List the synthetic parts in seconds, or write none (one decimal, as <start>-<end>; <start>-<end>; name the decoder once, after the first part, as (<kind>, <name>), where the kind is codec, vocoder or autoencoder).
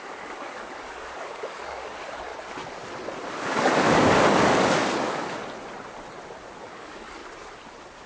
0.0-2.3 (codec, DAC); 3.3-5.4; 6.6-7.2